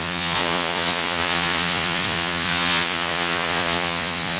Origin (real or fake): fake